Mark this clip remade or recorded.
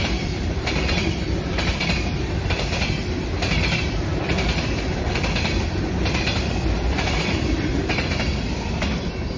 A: remade